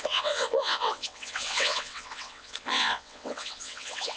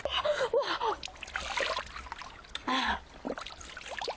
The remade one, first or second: first